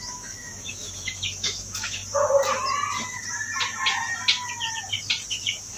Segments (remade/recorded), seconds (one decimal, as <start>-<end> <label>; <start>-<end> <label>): 0.0-2.0 remade; 2.0-5.3 recorded; 5.3-5.8 remade